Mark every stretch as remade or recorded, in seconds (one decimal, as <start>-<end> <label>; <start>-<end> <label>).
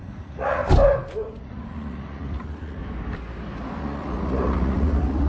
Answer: 0.0-0.6 remade; 0.6-1.4 recorded; 1.4-2.8 remade; 2.8-3.8 recorded; 3.8-5.3 remade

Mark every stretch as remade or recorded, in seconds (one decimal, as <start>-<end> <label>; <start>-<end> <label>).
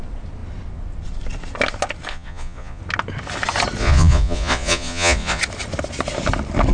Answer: 0.0-2.1 recorded; 2.1-2.8 remade; 2.8-3.8 recorded; 3.8-5.4 remade; 5.4-6.7 recorded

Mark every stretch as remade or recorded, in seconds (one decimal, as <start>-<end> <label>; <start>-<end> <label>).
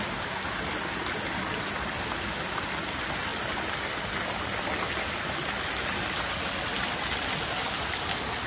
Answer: 0.0-8.5 recorded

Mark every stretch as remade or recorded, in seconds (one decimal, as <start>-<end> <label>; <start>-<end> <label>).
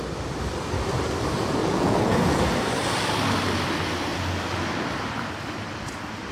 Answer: 0.0-1.6 recorded; 1.6-2.4 remade; 2.4-6.3 recorded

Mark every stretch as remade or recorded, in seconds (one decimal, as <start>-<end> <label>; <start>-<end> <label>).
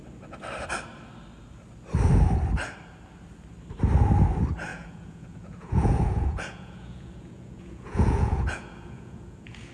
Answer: 0.0-4.7 recorded; 4.7-9.7 remade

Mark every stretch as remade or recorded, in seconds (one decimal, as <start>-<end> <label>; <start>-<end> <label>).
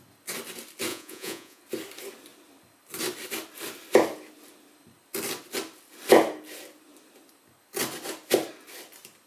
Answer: 0.0-0.9 recorded; 0.9-1.6 remade; 1.6-9.3 recorded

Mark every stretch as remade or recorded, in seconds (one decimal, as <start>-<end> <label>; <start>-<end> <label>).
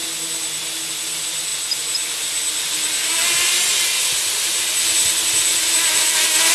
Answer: 0.0-6.5 recorded